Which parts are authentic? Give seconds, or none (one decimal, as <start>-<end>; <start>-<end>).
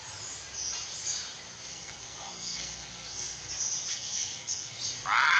0.0-1.7; 3.5-3.9; 4.8-5.4